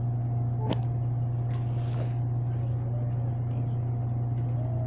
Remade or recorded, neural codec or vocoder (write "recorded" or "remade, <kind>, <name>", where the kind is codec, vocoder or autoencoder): recorded